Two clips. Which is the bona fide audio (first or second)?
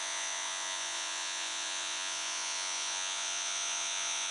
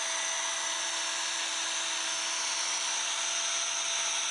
second